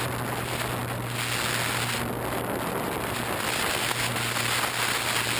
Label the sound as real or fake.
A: real